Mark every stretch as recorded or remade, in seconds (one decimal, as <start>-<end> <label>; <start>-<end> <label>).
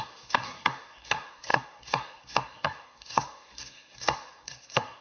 0.0-5.0 remade